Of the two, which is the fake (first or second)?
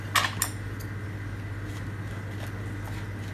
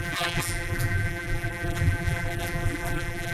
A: second